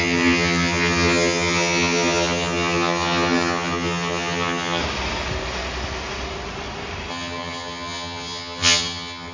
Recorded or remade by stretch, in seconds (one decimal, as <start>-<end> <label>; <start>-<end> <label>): 0.0-4.8 remade; 4.8-7.1 recorded; 7.1-9.3 remade